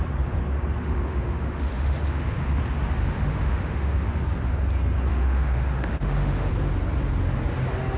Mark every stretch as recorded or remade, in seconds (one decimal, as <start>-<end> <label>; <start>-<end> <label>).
0.0-0.8 recorded; 0.8-2.6 remade; 2.6-3.0 recorded; 3.0-4.1 remade; 4.1-5.1 recorded; 5.1-6.5 remade; 6.5-8.0 recorded